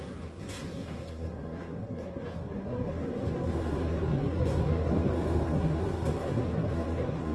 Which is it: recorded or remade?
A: remade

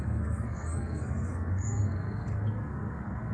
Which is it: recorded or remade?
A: remade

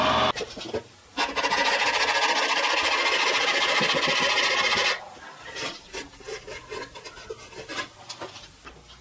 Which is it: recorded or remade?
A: recorded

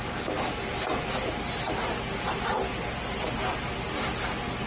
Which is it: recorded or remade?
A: recorded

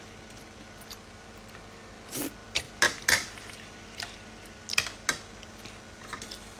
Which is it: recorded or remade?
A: recorded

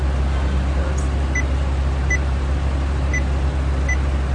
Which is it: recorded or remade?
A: recorded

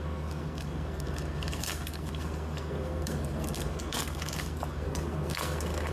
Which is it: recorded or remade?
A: remade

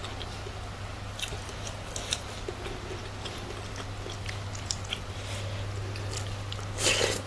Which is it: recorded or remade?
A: recorded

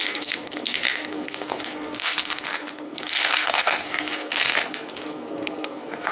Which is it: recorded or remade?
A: remade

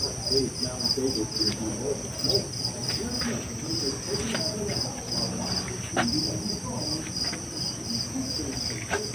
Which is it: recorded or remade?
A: recorded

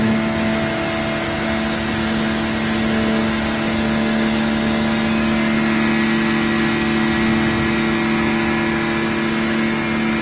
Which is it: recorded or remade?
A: recorded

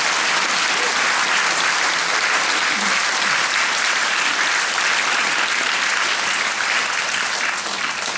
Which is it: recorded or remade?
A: recorded